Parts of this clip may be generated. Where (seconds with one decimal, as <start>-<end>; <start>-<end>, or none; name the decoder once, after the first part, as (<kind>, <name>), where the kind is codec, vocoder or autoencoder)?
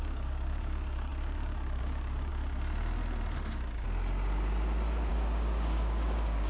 0.0-2.3 (codec, DAC); 5.1-6.5